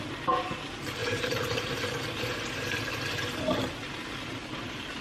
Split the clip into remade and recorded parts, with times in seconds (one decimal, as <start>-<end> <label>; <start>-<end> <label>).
0.0-1.0 recorded; 1.0-2.6 remade; 2.6-5.0 recorded

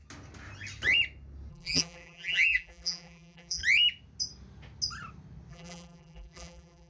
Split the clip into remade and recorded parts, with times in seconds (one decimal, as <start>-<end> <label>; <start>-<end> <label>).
0.0-1.5 recorded; 1.5-3.6 remade; 3.6-5.5 recorded; 5.5-6.9 remade

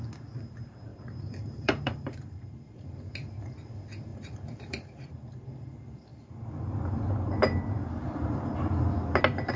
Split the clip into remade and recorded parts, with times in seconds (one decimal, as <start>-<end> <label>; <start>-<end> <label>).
0.0-0.9 recorded; 0.9-2.9 remade; 2.9-4.1 recorded; 4.1-5.1 remade; 5.1-9.6 recorded

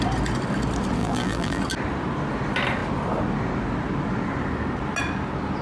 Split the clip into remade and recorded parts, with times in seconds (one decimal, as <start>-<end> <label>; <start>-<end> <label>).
0.0-1.0 recorded; 1.0-1.6 remade; 1.6-5.6 recorded

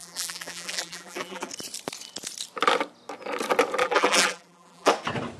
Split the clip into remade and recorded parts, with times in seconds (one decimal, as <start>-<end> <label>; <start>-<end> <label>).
0.0-1.5 remade; 1.5-3.8 recorded; 3.8-4.9 remade; 4.9-5.4 recorded